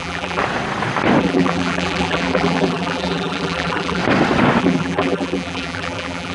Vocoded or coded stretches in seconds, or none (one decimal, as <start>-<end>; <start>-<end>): 0.0-0.4; 1.2-4.0; 4.6-6.3